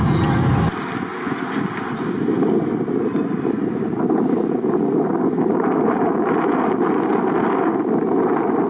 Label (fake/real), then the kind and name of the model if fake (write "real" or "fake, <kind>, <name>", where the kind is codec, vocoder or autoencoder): real